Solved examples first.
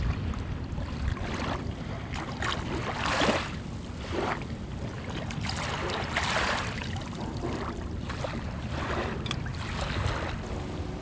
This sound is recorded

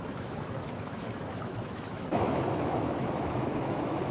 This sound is remade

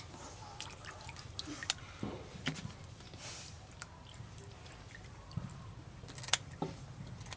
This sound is recorded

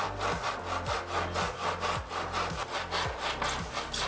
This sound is recorded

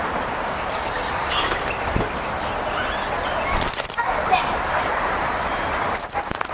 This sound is recorded